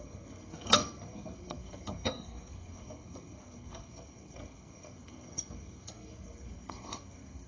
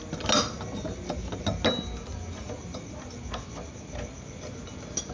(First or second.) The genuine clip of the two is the second